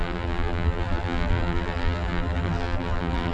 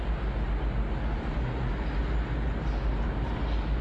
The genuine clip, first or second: second